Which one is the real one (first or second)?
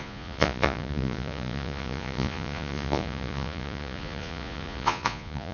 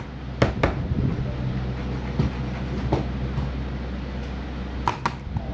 second